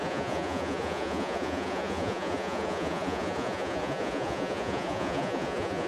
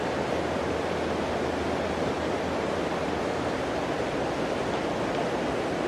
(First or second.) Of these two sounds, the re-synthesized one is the first